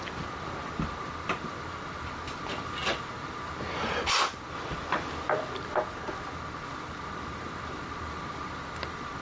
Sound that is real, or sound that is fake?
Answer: real